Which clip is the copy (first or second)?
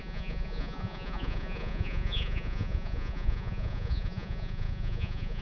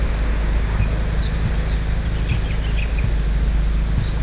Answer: first